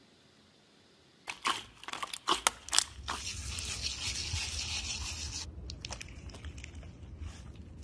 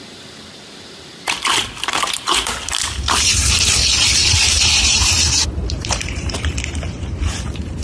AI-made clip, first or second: second